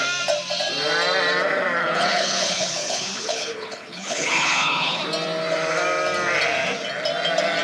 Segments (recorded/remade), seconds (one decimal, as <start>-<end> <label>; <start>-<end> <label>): 0.0-1.8 recorded; 1.8-5.0 remade; 5.0-7.6 recorded